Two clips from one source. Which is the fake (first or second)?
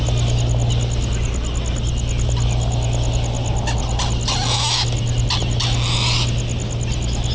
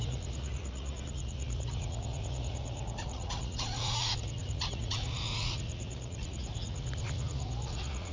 second